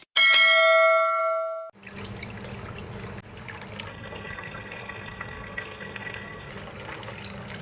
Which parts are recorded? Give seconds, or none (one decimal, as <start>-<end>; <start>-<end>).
0.0-3.9; 6.5-7.6